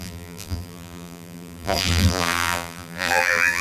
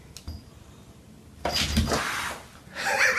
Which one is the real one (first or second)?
second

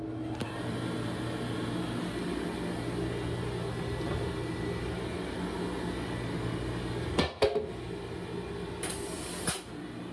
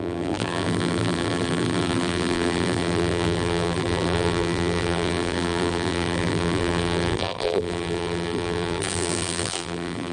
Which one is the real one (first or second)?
first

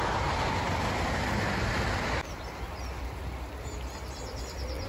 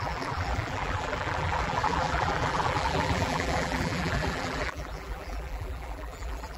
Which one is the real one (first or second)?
first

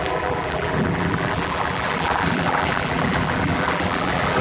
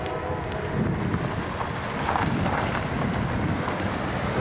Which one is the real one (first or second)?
second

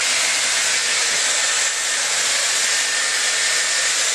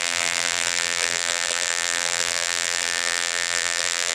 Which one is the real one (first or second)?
first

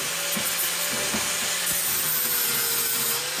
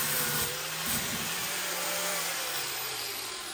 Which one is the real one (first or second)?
first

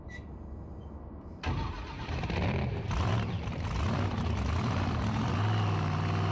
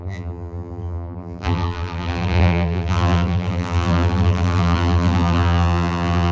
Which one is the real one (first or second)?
first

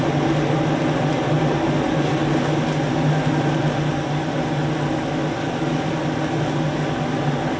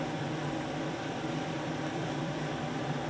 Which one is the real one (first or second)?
first